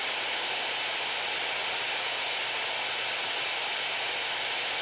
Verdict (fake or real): real